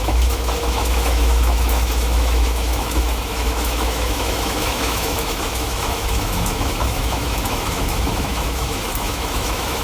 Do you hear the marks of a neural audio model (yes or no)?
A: yes